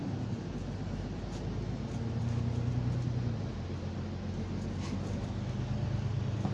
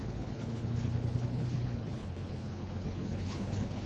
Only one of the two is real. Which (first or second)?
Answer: first